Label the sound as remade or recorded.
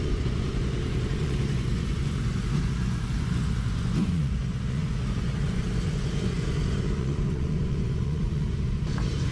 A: remade